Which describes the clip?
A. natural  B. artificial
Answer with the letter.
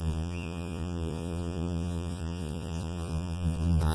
B